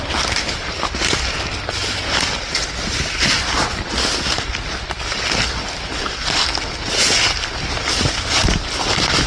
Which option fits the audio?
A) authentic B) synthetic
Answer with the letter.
A